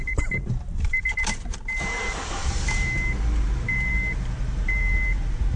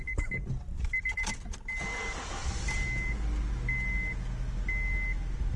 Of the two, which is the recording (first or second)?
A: second